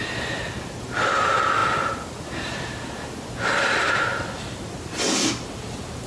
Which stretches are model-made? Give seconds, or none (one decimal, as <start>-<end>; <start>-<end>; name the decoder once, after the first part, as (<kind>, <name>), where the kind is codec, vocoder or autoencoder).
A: none